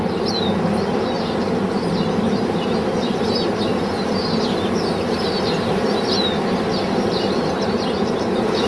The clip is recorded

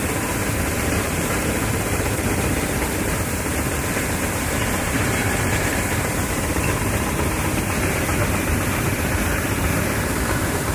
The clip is remade